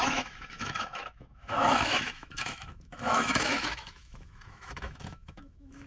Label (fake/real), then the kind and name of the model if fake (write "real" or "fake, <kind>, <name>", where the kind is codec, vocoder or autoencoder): fake, autoencoder, DAC-VAE